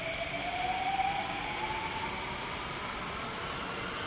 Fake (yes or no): no